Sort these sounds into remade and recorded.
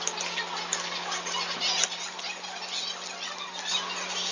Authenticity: recorded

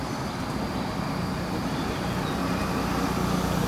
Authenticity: recorded